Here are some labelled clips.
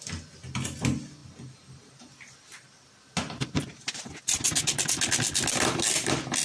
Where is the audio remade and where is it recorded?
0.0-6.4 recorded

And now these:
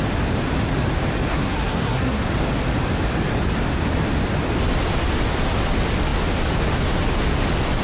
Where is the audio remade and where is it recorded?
0.0-1.3 recorded; 1.3-2.2 remade; 2.2-7.8 recorded

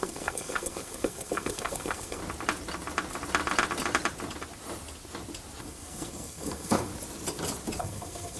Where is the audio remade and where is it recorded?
0.0-2.2 remade; 2.2-5.6 recorded; 5.6-6.9 remade; 6.9-7.8 recorded; 7.8-8.4 remade